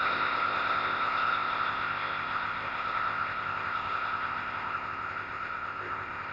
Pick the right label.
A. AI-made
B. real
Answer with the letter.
A